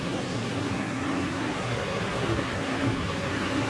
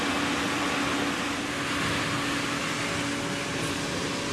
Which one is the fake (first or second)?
first